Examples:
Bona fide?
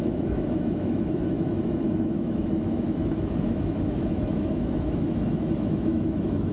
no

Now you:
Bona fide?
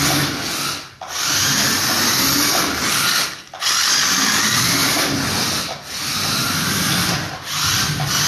yes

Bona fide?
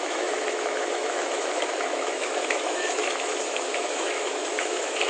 no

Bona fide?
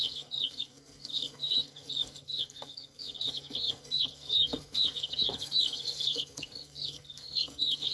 no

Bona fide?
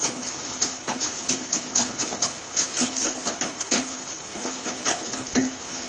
no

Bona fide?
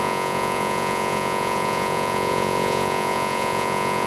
no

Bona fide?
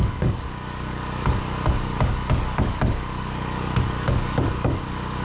no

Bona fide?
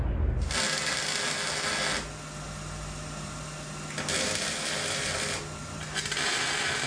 yes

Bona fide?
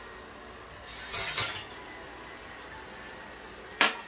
yes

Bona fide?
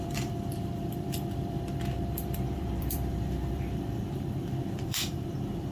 no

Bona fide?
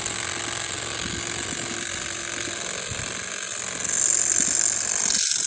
yes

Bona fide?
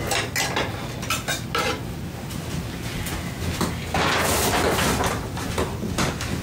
yes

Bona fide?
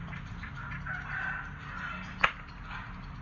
yes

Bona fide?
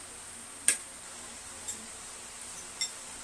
yes